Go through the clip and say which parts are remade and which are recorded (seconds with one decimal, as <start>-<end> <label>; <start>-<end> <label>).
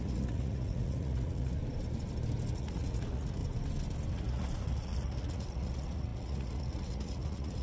0.0-1.6 remade; 1.6-2.5 recorded; 2.5-3.4 remade; 3.4-4.1 recorded; 4.1-7.6 remade